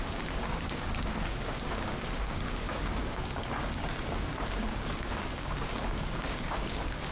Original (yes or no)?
no